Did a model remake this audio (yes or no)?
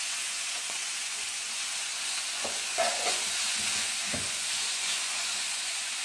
yes